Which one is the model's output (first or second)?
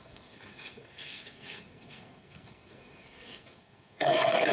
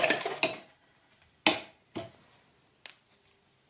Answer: first